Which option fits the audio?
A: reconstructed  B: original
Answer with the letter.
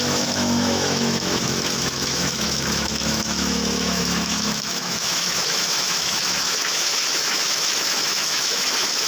A